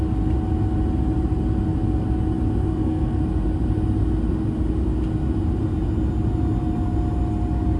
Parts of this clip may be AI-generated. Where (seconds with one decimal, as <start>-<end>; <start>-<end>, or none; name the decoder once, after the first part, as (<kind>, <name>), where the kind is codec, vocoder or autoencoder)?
2.7-3.2 (codec, SNAC)